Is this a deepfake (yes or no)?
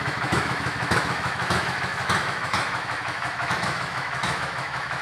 yes